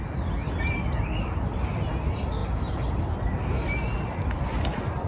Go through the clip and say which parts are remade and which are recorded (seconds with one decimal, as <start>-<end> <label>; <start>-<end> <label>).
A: 0.0-5.1 recorded